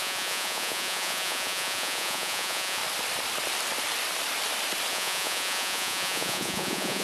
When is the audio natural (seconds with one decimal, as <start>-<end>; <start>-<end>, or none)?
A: 2.8-4.9